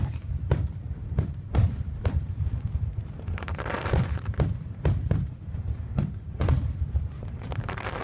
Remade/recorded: remade